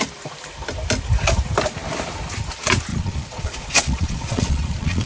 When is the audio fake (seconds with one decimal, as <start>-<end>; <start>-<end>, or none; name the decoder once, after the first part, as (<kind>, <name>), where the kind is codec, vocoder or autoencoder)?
2.9-5.1 (vocoder, Vocos)